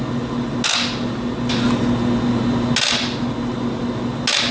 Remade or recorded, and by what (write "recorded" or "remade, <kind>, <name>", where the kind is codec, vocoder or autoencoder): recorded